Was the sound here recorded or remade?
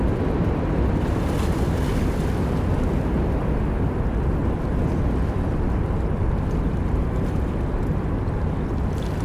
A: recorded